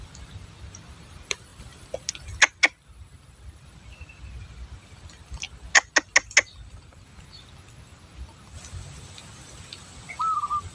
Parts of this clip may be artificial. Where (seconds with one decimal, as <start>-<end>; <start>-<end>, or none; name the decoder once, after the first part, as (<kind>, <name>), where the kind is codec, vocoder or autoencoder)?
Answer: none